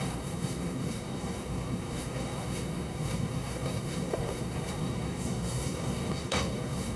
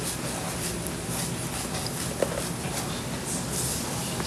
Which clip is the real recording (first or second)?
second